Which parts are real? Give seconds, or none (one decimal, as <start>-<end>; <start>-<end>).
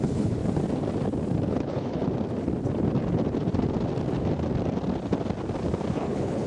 0.4-1.5; 2.0-5.9